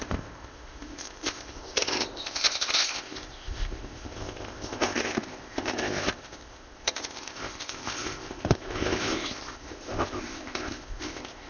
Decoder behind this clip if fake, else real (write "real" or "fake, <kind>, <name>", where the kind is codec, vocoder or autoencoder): fake, codec, ZipCodec